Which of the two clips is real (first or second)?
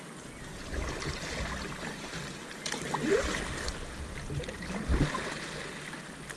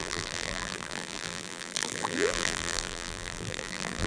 first